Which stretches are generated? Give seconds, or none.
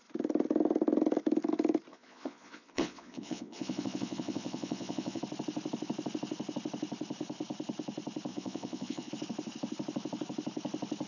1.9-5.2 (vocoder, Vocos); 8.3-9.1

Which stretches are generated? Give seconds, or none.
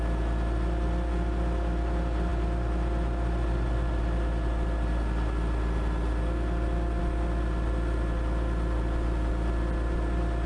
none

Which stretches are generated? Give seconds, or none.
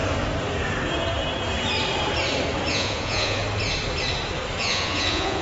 2.7-3.4 (vocoder, Vocos); 4.6-5.4